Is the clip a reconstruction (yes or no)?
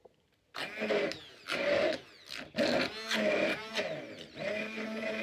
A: no